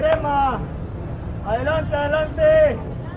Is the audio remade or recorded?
recorded